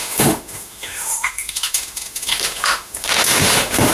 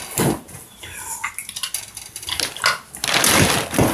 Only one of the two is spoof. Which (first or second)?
first